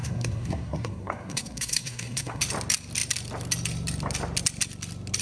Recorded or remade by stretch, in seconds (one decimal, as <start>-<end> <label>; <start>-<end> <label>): 0.0-2.4 remade; 2.4-5.2 recorded